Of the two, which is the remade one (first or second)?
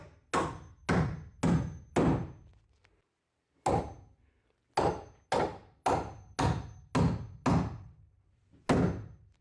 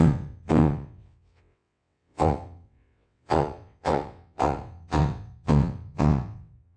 second